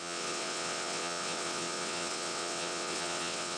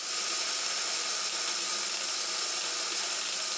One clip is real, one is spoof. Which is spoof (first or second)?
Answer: first